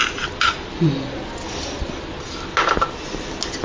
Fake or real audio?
real